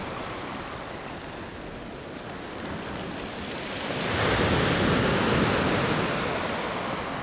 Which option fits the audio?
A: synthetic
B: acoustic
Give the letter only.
B